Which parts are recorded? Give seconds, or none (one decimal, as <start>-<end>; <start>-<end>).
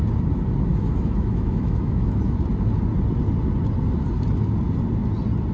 0.0-0.7; 2.2-5.5